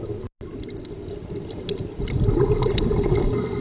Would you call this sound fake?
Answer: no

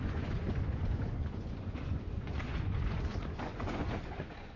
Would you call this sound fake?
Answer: yes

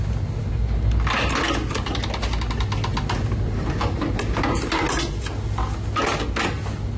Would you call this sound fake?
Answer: no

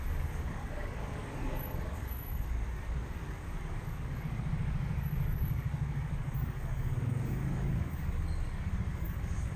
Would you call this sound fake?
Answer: yes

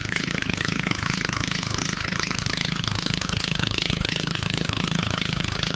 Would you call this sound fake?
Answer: yes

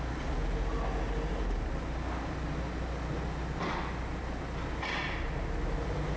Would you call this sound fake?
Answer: no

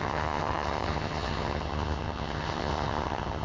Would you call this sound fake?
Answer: yes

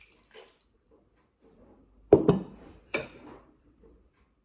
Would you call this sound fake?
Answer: yes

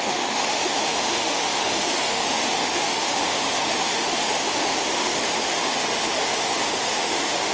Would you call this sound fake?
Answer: yes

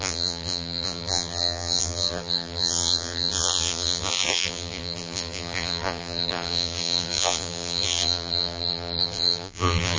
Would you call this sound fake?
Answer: yes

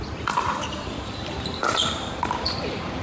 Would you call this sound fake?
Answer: yes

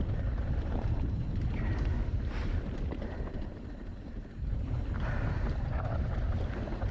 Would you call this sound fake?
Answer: yes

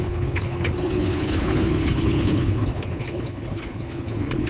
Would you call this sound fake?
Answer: yes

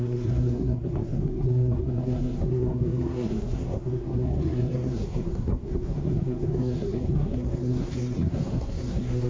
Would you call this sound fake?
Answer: yes